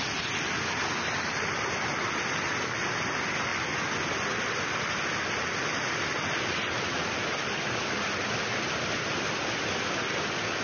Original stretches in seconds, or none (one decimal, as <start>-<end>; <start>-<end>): 0.0-10.6